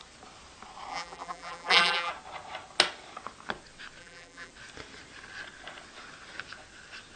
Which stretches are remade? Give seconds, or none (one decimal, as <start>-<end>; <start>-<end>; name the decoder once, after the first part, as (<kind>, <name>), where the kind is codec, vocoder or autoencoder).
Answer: 0.9-2.1 (vocoder, BigVGAN v2); 4.0-4.5